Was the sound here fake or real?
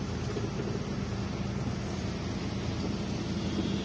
real